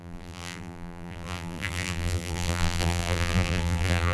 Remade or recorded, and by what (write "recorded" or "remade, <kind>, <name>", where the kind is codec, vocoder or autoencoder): remade, vocoder, BigVGAN v2